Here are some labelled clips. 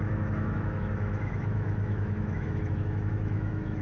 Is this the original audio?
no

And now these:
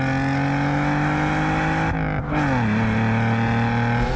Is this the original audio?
yes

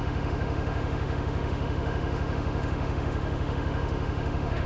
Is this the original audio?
no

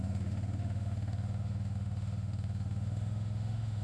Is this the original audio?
no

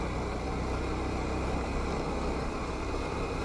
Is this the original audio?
yes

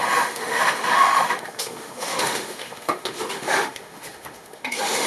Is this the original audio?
no